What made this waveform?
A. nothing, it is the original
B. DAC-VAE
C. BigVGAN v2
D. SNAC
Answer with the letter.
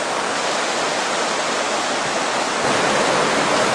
A